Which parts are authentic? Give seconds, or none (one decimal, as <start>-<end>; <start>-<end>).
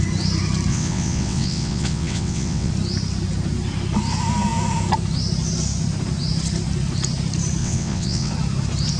0.0-0.7; 2.7-7.6; 8.3-9.0